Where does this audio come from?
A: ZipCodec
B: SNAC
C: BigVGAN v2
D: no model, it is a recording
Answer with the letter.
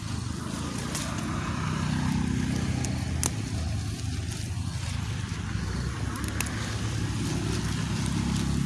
D